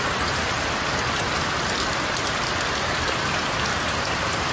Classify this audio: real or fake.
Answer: real